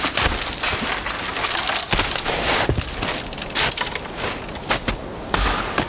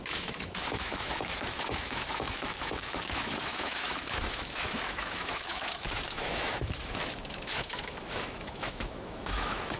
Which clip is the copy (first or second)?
second